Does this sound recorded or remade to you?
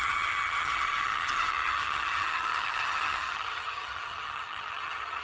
remade